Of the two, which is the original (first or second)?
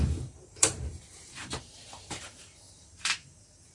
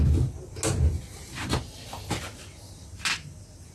second